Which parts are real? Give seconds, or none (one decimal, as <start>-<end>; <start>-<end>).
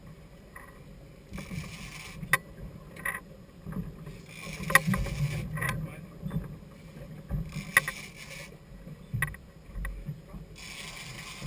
0.0-11.5